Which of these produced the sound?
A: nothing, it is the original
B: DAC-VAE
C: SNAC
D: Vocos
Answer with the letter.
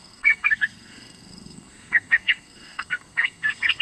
C